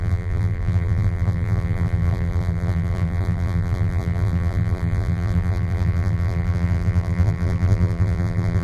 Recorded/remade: remade